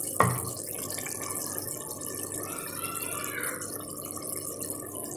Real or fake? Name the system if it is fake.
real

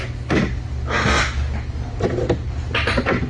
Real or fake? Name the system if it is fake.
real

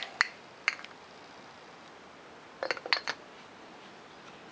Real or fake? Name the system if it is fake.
real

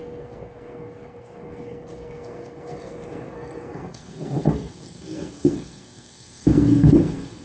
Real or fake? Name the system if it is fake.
fake, codec, SNAC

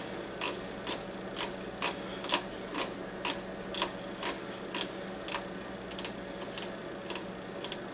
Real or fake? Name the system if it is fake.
real